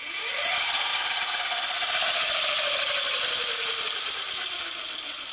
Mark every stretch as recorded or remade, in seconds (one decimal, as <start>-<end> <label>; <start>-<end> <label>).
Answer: 0.0-5.3 recorded